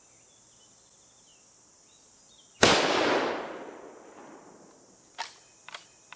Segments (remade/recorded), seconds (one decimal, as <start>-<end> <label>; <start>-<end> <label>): 0.0-6.2 recorded